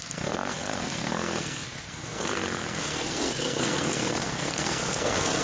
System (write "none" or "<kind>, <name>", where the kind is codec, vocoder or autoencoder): codec, SNAC